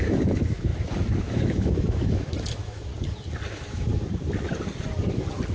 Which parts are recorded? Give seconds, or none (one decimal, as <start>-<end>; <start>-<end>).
0.7-1.2; 2.9-3.5; 3.9-5.5